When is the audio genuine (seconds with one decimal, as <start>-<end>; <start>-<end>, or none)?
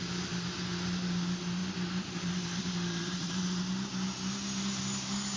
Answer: 0.0-1.6; 3.6-5.4